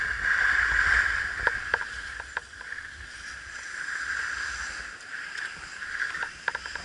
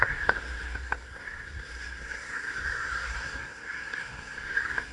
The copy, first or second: second